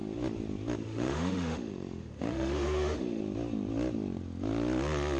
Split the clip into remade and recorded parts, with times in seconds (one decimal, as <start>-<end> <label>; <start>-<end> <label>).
0.0-0.8 recorded; 0.8-3.2 remade; 3.2-5.2 recorded